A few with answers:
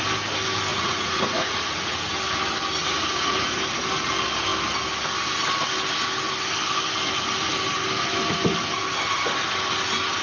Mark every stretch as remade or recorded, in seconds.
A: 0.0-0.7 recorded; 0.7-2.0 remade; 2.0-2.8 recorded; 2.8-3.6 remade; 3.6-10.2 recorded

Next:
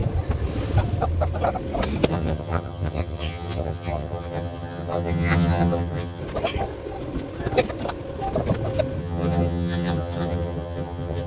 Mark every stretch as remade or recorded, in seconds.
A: 0.0-2.1 recorded; 2.1-6.2 remade; 6.2-9.0 recorded; 9.0-11.3 remade